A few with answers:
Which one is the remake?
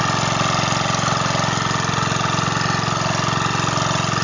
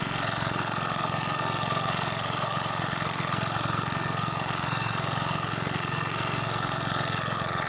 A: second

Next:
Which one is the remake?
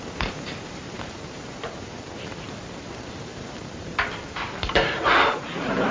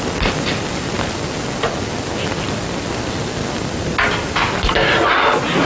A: first